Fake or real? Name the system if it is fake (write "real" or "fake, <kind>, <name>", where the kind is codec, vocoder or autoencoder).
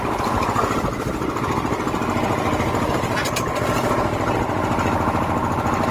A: real